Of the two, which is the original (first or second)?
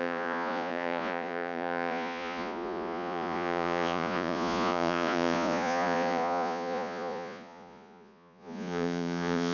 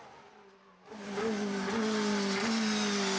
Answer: second